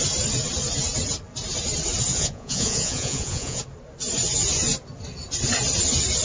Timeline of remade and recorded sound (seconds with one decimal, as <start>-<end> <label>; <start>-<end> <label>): 0.0-2.1 recorded; 2.1-3.6 remade; 3.6-6.2 recorded

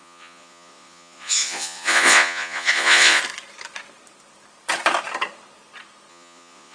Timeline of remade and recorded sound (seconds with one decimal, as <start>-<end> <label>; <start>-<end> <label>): 0.0-3.2 remade; 3.2-6.1 recorded; 6.1-6.7 remade

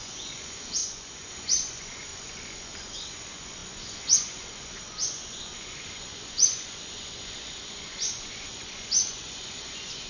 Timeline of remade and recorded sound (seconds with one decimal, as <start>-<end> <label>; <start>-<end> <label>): 0.0-10.1 remade

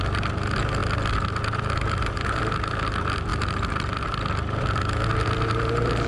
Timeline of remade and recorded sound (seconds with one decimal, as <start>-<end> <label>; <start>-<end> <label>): 0.0-6.1 recorded

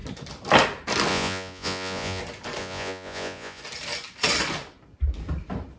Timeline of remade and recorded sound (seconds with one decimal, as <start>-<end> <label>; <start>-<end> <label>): 0.0-1.1 recorded; 1.1-2.2 remade; 2.2-2.6 recorded; 2.6-3.6 remade; 3.6-5.8 recorded